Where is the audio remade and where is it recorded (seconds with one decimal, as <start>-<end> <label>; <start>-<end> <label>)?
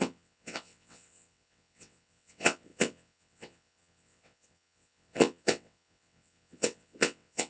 0.0-7.5 remade